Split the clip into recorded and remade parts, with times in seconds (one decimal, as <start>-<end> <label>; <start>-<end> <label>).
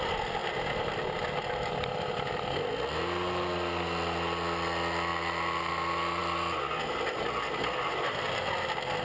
0.0-9.0 recorded